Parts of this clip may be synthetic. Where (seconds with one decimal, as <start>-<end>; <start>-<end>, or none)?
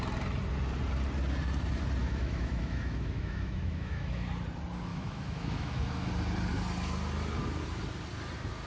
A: 2.0-4.3; 4.9-6.1